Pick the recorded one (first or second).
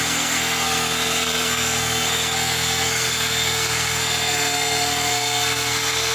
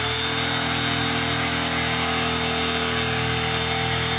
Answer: second